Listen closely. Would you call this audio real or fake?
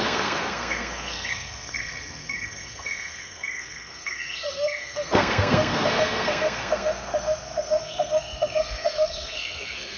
fake